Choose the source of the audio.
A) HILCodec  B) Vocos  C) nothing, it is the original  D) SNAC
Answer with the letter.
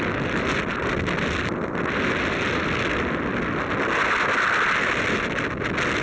C